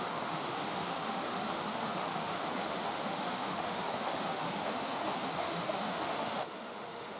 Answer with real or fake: fake